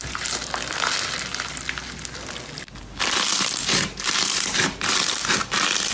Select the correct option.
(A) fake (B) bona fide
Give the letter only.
B